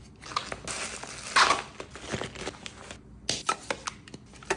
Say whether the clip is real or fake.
real